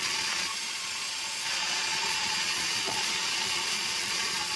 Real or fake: fake